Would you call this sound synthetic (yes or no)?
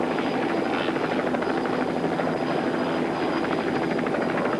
no